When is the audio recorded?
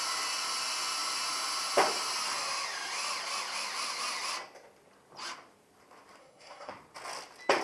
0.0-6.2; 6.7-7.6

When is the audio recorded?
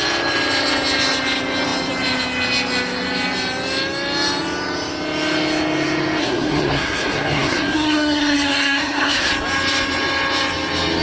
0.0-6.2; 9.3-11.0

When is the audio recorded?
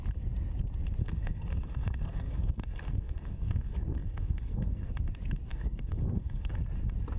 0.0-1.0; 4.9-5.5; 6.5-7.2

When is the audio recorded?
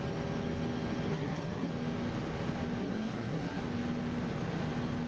0.0-1.1; 1.7-2.8; 3.6-5.1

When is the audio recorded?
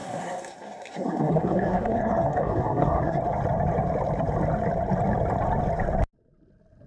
3.2-6.9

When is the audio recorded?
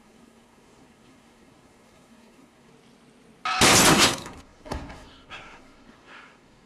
2.7-3.9